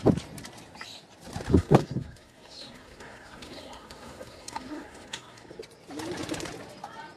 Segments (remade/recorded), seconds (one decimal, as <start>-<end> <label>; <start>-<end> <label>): 0.0-1.5 recorded; 1.5-5.6 remade; 5.6-7.2 recorded